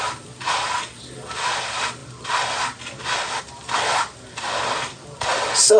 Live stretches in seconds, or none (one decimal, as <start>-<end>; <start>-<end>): 0.0-5.8